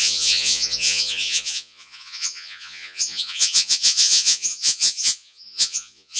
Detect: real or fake fake